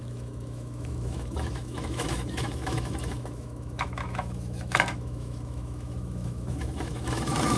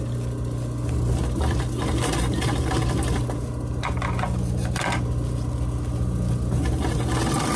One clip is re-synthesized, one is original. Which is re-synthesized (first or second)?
first